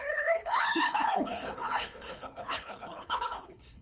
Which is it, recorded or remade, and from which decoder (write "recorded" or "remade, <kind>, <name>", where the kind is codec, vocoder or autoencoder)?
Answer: remade, codec, HILCodec